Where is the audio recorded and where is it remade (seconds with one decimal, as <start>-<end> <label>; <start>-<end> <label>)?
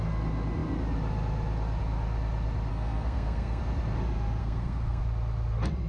0.0-2.7 recorded; 2.7-3.6 remade; 3.6-4.4 recorded; 4.4-5.0 remade; 5.0-5.9 recorded